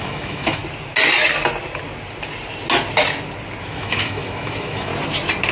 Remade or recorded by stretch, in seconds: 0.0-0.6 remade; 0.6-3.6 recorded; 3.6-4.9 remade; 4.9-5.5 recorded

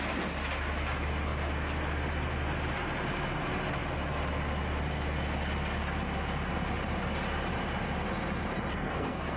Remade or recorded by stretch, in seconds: 0.0-8.7 recorded; 8.7-9.4 remade

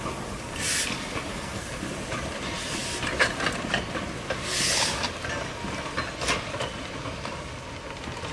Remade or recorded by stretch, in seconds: 0.0-1.3 recorded; 1.3-1.8 remade; 1.8-8.3 recorded

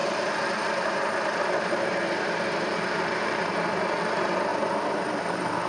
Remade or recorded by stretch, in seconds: 0.0-3.4 remade; 3.4-4.5 recorded; 4.5-5.7 remade

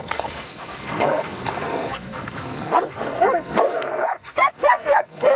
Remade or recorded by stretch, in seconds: 0.0-5.4 remade

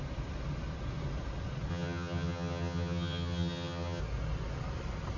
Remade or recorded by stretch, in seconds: 0.0-1.7 recorded; 1.7-4.0 remade; 4.0-5.2 recorded

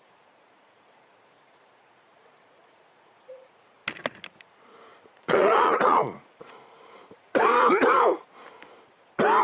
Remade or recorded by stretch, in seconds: 0.0-3.8 remade; 3.8-4.4 recorded; 4.4-8.3 remade; 8.3-9.4 recorded

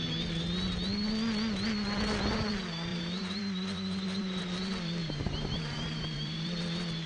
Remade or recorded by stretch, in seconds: 0.0-2.9 recorded; 2.9-4.4 remade; 4.4-5.0 recorded; 5.0-6.6 remade; 6.6-7.1 recorded